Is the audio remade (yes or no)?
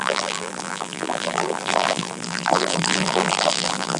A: yes